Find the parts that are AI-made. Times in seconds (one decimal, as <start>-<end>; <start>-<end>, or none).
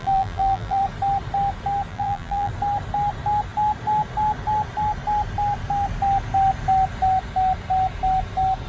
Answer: 0.0-0.8; 1.9-2.5